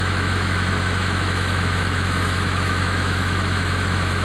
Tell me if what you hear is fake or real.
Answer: fake